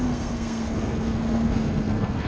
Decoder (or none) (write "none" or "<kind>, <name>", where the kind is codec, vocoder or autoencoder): codec, SNAC